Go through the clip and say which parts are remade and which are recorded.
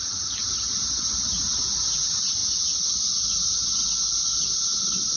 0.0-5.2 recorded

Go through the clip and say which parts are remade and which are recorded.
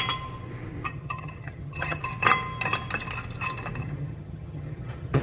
0.0-0.9 recorded; 0.9-2.0 remade; 2.0-3.8 recorded; 3.8-5.2 remade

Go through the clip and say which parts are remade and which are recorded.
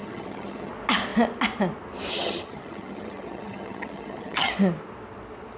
0.0-0.7 remade; 0.7-2.1 recorded; 2.1-4.5 remade; 4.5-5.6 recorded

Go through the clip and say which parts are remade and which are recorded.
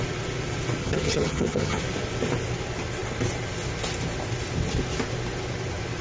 0.0-0.8 recorded; 0.8-1.8 remade; 1.8-6.0 recorded